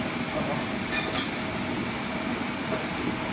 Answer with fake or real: real